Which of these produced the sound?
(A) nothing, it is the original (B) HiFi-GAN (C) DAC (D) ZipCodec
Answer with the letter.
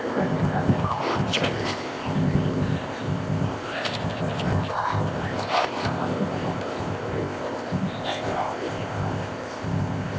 D